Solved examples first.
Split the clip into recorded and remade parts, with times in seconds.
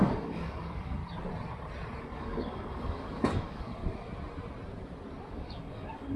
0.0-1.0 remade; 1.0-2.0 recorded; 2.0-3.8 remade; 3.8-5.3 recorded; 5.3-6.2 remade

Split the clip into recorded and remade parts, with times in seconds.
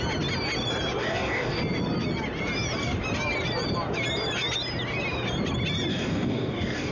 0.0-1.0 recorded; 1.0-1.6 remade; 1.6-5.9 recorded; 5.9-6.9 remade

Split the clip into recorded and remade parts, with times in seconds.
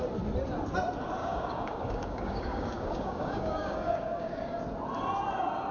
0.0-1.2 recorded; 1.2-4.6 remade; 4.6-5.7 recorded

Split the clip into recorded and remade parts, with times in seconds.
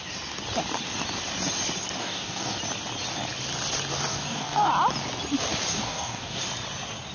0.0-2.0 recorded; 2.0-2.6 remade; 2.6-4.1 recorded; 4.1-4.7 remade; 4.7-5.7 recorded; 5.7-6.4 remade; 6.4-7.1 recorded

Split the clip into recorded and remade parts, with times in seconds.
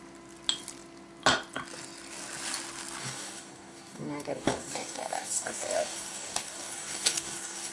0.0-3.0 recorded; 3.0-7.7 remade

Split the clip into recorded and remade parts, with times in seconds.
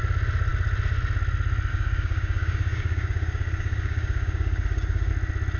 0.0-1.7 recorded; 1.7-5.1 remade; 5.1-5.6 recorded